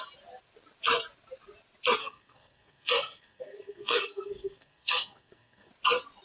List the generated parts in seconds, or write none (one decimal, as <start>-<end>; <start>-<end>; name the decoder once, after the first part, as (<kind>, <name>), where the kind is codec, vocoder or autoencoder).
2.0-5.7 (codec, SNAC)